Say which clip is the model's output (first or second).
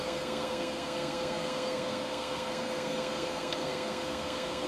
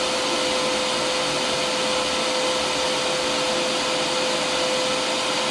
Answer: first